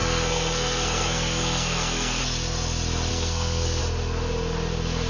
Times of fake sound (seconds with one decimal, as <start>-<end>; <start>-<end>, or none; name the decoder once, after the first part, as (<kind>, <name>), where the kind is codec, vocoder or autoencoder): 0.0-2.2 (codec, SNAC); 3.1-3.8

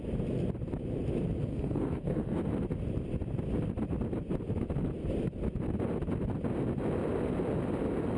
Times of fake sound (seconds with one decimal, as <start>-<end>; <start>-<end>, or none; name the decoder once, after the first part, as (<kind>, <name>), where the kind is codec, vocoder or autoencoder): 1.5-2.4 (codec, SNAC)

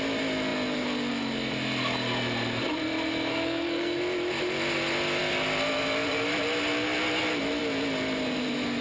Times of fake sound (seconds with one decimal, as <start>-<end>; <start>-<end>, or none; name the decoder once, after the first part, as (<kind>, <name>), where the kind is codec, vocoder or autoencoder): 3.3-4.0 (codec, SNAC)

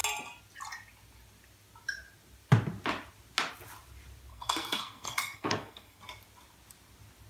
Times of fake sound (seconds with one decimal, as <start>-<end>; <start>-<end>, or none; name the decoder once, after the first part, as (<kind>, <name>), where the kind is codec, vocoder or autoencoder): 4.3-6.0 (codec, SNAC)

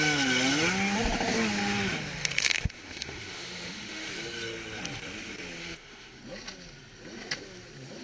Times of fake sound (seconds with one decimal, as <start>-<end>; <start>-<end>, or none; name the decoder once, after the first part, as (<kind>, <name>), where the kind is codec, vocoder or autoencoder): 2.2-4.1 (autoencoder, DAC-VAE); 5.6-6.2

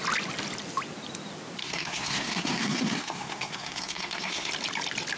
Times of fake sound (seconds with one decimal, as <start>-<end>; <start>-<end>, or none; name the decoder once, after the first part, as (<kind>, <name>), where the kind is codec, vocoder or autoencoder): 1.6-4.5 (codec, SNAC)

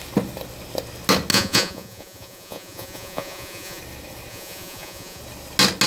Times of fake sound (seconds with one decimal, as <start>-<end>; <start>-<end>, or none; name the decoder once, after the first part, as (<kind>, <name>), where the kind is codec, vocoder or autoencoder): 1.3-3.8 (vocoder, Vocos); 4.3-5.2

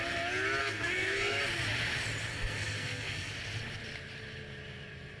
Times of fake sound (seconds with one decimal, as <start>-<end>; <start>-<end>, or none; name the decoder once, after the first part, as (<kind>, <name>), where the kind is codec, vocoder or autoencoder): 0.6-1.4 (codec, SNAC); 2.3-3.3